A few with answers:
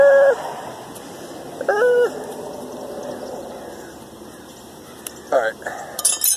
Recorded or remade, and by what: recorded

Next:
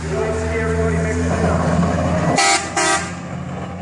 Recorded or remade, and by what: recorded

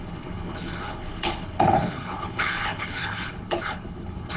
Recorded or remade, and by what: remade, codec, HILCodec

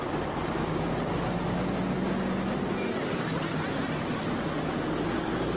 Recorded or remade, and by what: recorded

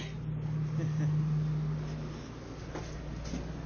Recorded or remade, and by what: recorded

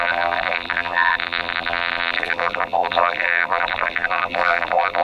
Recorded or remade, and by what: remade, vocoder, BigVGAN v2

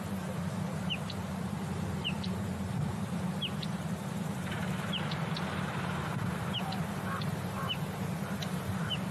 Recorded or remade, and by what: remade, vocoder, BigVGAN v2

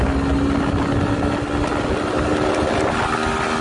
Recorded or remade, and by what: recorded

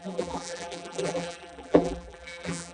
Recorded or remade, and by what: remade, vocoder, BigVGAN v2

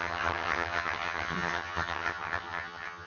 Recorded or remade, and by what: remade, vocoder, HiFi-GAN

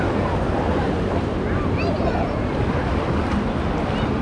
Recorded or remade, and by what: recorded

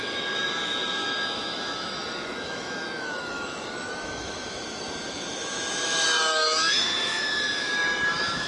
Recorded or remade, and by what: remade, autoencoder, DAC-VAE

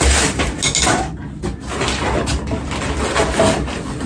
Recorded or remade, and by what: recorded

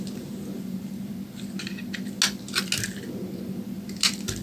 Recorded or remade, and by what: recorded